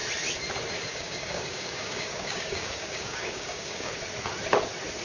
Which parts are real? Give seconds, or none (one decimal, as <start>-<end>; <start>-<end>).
0.0-0.9; 3.9-5.0